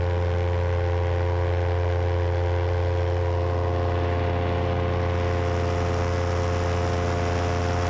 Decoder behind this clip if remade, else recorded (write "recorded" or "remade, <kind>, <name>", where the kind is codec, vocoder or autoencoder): recorded